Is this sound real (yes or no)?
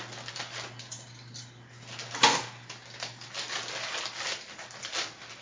yes